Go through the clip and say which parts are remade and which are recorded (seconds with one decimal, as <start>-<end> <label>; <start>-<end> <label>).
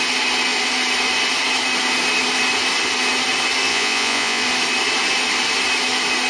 0.0-3.7 recorded; 3.7-4.4 remade; 4.4-6.3 recorded